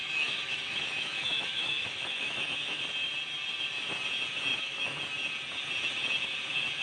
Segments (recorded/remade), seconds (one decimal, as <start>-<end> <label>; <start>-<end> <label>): 0.0-2.8 remade; 2.8-4.5 recorded; 4.5-5.0 remade; 5.0-6.8 recorded